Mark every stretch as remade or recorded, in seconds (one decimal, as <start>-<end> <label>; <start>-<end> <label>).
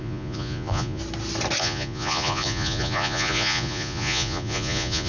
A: 0.0-1.0 remade; 1.0-1.6 recorded; 1.6-5.1 remade